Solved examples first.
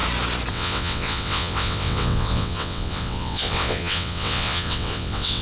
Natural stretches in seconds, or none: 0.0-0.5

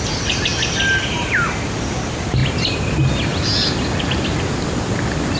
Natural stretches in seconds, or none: 0.0-5.4

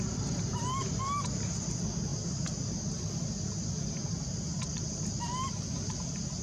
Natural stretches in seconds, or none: 0.0-6.4